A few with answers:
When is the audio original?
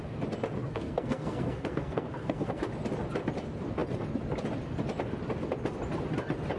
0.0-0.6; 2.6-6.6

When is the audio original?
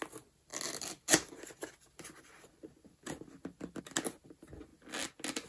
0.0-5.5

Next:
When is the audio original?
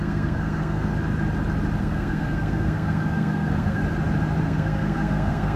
0.9-1.8; 3.8-4.4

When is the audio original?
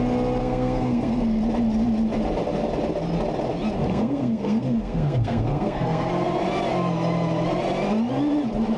0.0-0.4; 1.4-3.9; 6.1-8.8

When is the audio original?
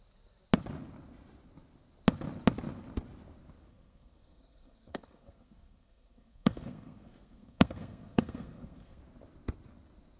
0.0-3.7; 9.0-10.2